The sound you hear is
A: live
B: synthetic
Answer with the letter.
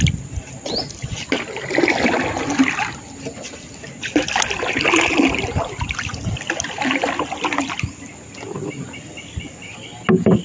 A